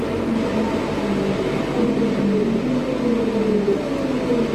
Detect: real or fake real